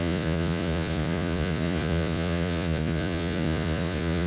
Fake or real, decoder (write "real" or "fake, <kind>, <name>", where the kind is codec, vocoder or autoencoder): fake, vocoder, Vocos